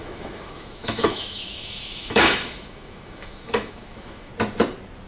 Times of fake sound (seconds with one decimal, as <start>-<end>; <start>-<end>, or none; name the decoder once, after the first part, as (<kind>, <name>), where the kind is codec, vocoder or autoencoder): 0.0-4.3 (autoencoder, DAC-VAE)